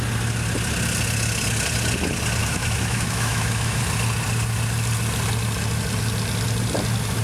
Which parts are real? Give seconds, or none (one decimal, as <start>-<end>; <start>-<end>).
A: 0.0-2.4; 3.8-7.2

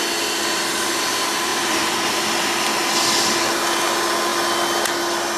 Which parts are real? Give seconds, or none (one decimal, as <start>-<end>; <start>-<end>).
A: 0.0-1.5; 2.1-5.4

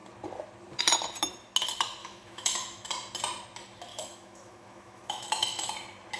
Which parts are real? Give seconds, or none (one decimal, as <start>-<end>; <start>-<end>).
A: 0.0-2.0; 2.9-3.9; 5.7-6.2

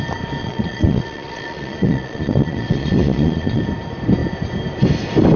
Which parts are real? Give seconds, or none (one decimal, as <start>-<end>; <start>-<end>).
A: 0.0-0.4; 3.6-5.4

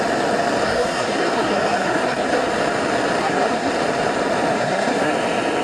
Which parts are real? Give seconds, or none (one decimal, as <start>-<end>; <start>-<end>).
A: 0.0-0.6; 2.5-3.2; 3.7-4.5; 5.1-5.6